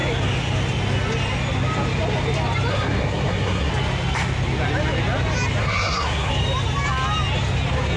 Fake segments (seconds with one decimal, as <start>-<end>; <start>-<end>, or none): 2.7-3.7; 5.6-6.3